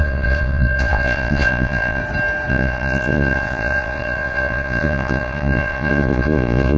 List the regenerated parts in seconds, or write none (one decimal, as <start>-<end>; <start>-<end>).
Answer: 0.0-2.0; 2.5-6.8